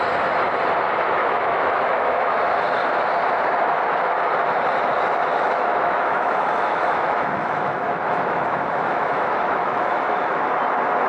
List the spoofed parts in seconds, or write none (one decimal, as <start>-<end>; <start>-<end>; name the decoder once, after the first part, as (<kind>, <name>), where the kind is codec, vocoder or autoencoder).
1.2-2.4 (autoencoder, DAC-VAE); 5.3-10.5